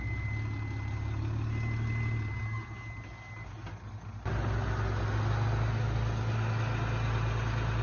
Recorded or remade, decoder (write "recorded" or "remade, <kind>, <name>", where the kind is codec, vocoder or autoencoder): recorded